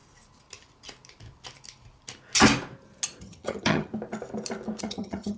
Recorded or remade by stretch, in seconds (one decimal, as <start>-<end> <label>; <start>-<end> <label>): 0.0-3.2 recorded; 3.2-3.9 remade; 3.9-4.8 recorded; 4.8-5.4 remade